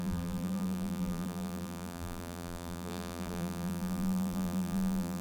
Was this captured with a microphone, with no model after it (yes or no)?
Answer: no